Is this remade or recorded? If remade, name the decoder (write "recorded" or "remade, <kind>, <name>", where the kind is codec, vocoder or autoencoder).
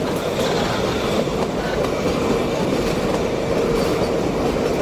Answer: recorded